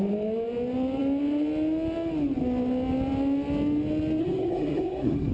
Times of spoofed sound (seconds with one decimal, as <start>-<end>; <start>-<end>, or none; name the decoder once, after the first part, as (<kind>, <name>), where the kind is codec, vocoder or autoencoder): 4.2-5.3 (codec, SNAC)